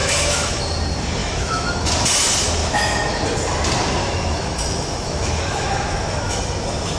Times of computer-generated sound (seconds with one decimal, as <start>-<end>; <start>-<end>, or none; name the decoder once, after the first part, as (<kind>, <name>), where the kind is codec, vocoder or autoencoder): 0.0-0.6 (autoencoder, DAC-VAE); 1.2-1.9; 2.6-3.2; 4.0-6.4